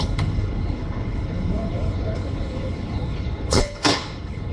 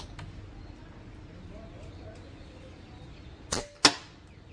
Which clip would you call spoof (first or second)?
first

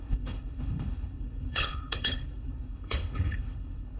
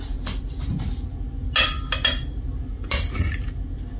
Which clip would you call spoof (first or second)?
first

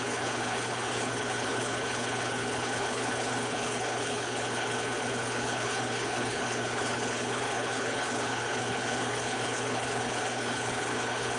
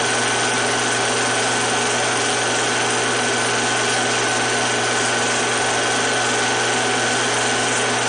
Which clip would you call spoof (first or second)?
first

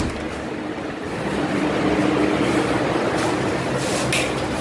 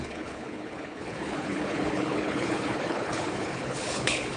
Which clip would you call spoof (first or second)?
second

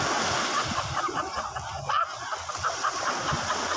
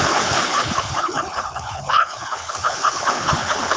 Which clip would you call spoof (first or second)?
second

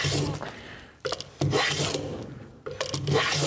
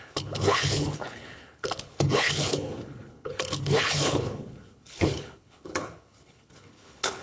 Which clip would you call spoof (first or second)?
second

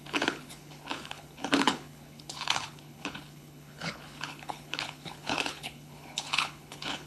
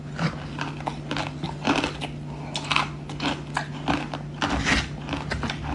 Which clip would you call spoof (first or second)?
first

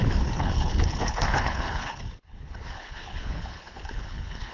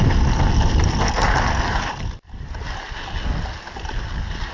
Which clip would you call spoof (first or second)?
first